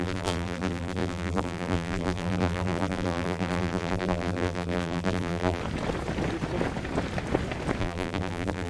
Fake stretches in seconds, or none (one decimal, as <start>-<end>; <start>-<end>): 0.0-5.6; 7.8-8.7